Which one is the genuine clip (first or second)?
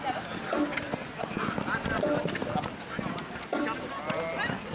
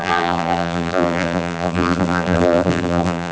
first